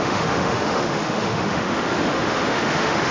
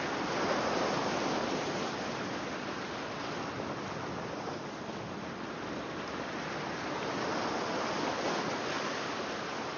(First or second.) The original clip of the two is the second